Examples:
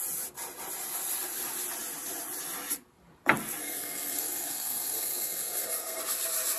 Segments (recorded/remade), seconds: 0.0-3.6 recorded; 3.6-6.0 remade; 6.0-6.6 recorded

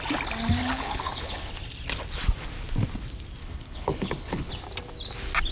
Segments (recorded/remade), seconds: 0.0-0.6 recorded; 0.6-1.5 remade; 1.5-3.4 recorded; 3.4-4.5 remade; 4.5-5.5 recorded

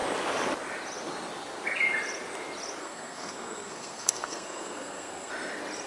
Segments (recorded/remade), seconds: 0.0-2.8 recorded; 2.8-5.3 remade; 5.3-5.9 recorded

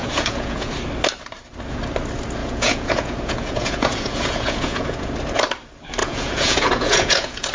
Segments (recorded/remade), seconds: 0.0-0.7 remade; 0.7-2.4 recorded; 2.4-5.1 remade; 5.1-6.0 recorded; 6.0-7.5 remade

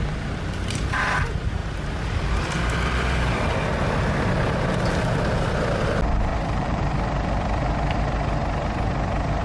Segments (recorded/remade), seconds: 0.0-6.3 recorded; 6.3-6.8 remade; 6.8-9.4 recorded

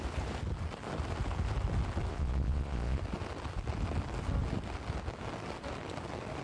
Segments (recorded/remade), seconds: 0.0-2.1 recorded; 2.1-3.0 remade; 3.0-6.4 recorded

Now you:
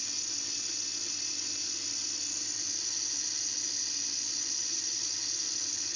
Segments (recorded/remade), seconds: 0.0-6.0 recorded